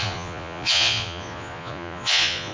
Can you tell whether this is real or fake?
fake